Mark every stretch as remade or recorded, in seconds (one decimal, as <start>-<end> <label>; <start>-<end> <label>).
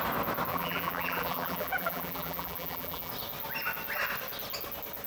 0.0-0.5 recorded; 0.5-3.1 remade; 3.1-5.1 recorded